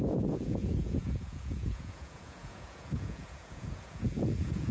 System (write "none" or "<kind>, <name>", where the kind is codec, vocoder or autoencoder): vocoder, Vocos